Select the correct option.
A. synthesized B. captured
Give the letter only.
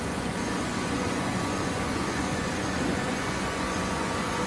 A